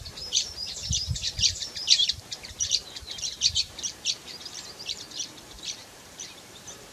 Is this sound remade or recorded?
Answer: remade